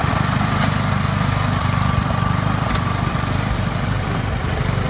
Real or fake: fake